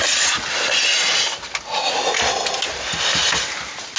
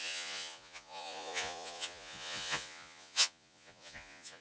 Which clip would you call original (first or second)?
first